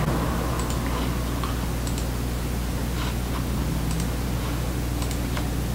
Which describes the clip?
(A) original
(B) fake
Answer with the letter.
A